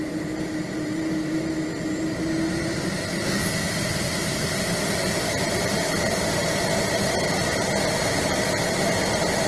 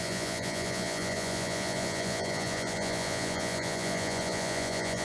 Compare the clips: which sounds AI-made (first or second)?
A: second